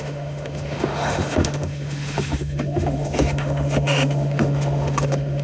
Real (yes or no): no